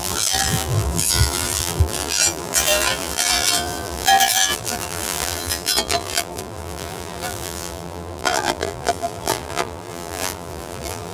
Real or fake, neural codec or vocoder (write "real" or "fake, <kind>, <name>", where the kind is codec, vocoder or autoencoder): fake, vocoder, BigVGAN v2